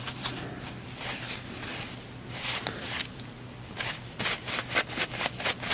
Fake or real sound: real